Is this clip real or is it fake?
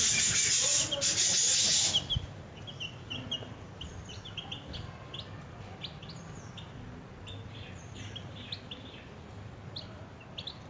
real